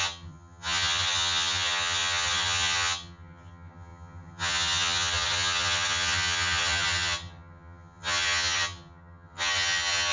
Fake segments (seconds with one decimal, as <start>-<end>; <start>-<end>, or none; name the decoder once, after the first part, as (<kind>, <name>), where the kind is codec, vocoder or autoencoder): 0.0-10.1 (vocoder, HiFi-GAN)